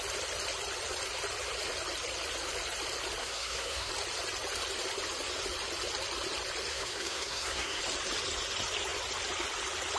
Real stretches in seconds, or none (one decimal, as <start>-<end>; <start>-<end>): 0.0-3.2; 3.9-6.7; 7.8-10.0

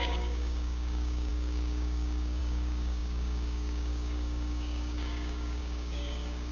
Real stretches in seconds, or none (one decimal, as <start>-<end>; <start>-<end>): none